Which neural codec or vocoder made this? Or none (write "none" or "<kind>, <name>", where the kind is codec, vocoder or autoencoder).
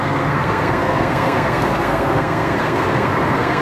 codec, SNAC